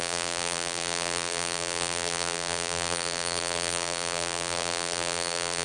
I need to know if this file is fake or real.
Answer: fake